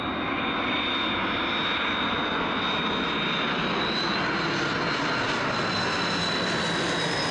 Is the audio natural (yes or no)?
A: yes